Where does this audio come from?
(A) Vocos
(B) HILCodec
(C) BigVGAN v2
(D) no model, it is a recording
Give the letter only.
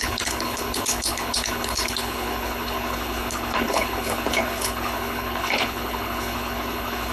B